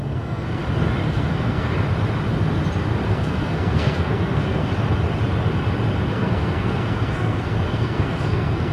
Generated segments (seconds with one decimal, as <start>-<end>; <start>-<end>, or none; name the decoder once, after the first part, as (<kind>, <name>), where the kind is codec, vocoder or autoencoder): 0.0-0.6 (codec, SNAC); 1.1-1.7; 3.1-4.7; 6.1-8.7